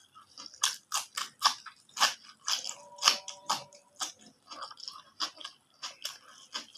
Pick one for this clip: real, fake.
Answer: real